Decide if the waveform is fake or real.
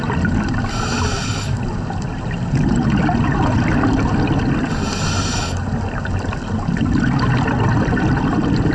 real